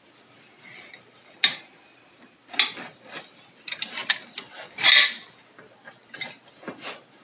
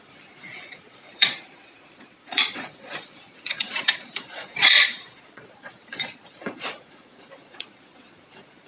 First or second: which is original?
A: first